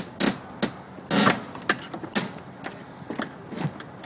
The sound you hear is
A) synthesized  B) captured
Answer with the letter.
B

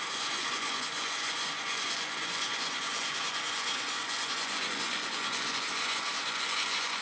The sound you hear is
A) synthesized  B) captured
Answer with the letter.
A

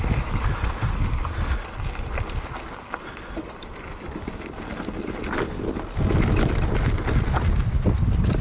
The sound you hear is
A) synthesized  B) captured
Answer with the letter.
B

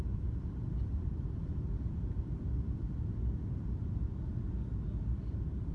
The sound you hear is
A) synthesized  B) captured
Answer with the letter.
A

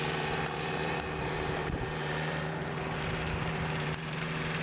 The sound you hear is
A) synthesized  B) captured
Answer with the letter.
A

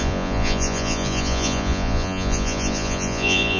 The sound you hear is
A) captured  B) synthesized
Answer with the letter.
B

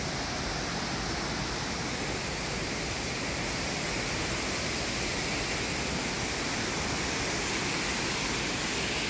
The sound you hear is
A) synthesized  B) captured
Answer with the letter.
B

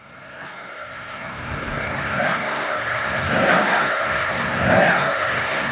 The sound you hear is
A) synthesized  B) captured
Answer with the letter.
A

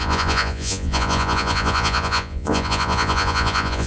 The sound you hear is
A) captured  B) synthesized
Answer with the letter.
B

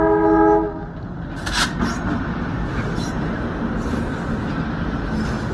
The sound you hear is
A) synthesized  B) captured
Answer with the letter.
B